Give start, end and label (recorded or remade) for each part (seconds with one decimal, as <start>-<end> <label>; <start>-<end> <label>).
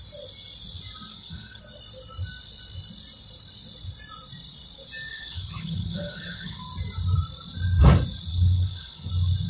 0.0-1.1 recorded; 1.1-1.6 remade; 1.6-5.1 recorded; 5.1-6.6 remade; 6.6-8.3 recorded; 8.3-9.1 remade; 9.1-9.5 recorded